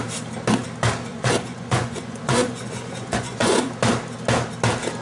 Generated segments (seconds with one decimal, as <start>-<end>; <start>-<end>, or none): 1.1-3.6